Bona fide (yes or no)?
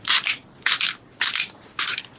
yes